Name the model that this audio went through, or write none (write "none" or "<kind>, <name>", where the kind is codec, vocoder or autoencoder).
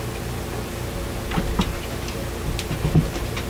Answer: none